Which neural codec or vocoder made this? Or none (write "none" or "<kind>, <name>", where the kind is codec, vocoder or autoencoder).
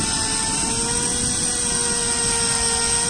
none